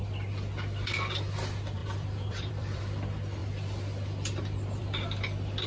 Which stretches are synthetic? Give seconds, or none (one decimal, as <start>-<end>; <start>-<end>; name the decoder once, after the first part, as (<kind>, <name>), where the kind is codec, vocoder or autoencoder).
1.8-2.8 (vocoder, BigVGAN v2)